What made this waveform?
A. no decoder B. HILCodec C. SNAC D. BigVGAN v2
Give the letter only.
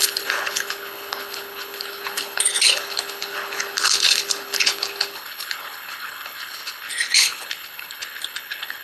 B